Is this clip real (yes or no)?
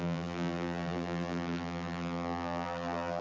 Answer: no